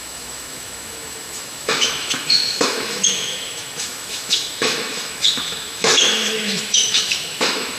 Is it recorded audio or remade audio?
remade